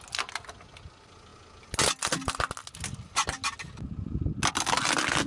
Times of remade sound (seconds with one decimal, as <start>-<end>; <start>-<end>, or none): none